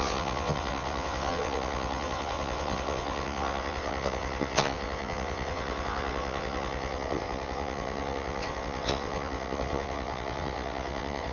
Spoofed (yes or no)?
yes